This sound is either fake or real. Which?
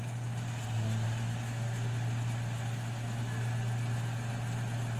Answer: real